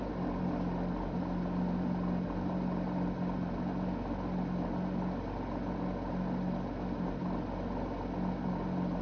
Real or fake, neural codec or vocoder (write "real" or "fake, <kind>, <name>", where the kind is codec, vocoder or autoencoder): real